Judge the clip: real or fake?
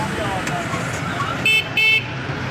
real